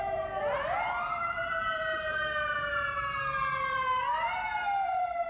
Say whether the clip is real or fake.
fake